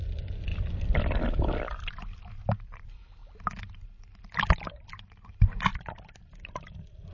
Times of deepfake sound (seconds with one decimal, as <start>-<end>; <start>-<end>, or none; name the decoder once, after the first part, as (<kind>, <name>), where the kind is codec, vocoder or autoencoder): none